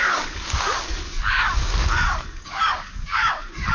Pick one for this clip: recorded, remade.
remade